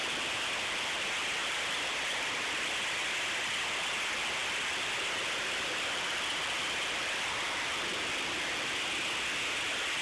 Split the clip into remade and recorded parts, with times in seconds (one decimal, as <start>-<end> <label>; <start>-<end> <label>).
0.0-0.6 remade; 0.6-1.4 recorded; 1.4-2.7 remade; 2.7-10.0 recorded